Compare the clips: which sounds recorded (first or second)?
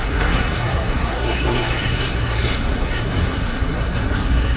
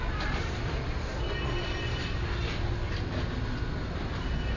second